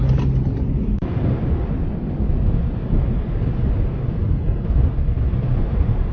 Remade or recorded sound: recorded